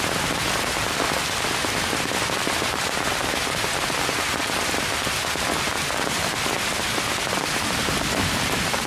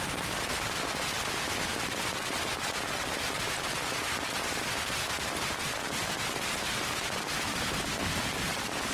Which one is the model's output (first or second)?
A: second